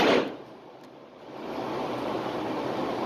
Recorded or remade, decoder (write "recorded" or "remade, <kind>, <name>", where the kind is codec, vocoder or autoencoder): recorded